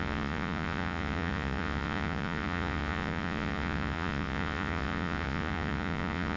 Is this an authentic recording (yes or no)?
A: no